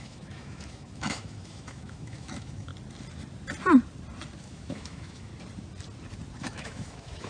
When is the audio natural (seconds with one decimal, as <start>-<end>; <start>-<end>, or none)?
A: 2.7-4.4; 5.3-6.4